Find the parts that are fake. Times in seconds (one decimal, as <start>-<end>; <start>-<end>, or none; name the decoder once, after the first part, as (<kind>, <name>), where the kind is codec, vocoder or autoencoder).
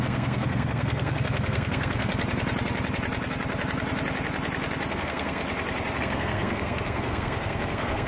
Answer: 0.0-2.1 (codec, SNAC); 4.9-5.4; 6.0-8.1